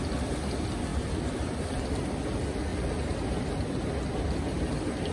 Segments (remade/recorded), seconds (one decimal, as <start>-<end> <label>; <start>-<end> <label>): 0.0-0.9 recorded; 0.9-1.6 remade; 1.6-2.7 recorded; 2.7-3.5 remade; 3.5-5.1 recorded